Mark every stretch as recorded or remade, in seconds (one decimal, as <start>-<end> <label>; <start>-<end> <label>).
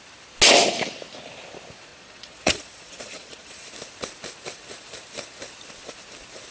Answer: 0.0-1.9 recorded; 1.9-3.7 remade; 3.7-6.5 recorded